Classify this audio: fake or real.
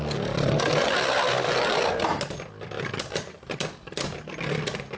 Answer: real